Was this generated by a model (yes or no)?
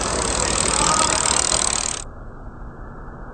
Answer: no